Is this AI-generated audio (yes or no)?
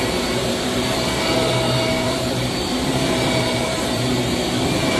yes